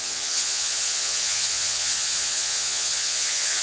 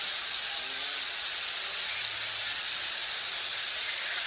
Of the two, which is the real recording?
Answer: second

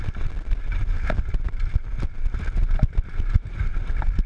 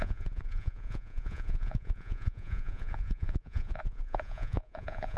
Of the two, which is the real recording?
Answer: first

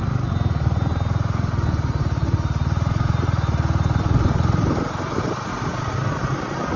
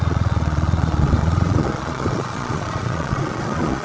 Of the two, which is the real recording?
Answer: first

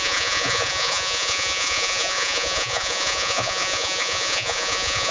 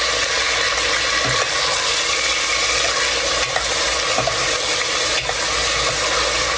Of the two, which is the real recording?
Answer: second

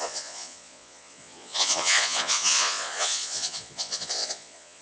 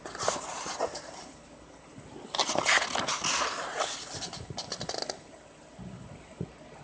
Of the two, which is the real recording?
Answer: second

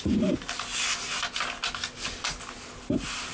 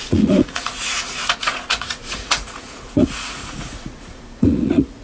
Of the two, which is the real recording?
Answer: first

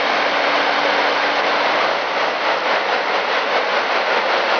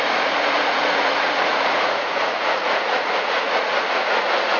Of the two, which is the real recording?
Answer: first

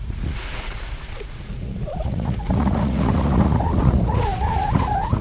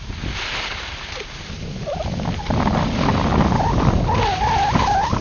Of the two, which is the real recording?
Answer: second